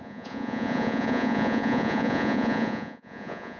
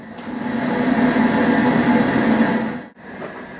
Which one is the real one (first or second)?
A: second